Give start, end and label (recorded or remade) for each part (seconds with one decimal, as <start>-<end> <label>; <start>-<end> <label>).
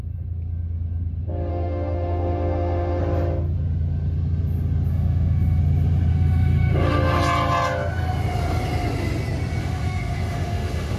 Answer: 0.0-1.5 recorded; 1.5-3.0 remade; 3.0-4.9 recorded; 4.9-5.6 remade; 5.6-6.1 recorded; 6.1-7.2 remade; 7.2-9.6 recorded; 9.6-11.0 remade